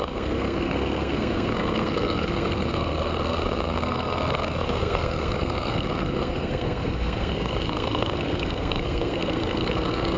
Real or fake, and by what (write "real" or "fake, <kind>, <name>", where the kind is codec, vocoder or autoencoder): fake, codec, SNAC